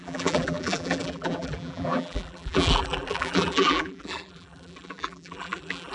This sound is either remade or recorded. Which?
remade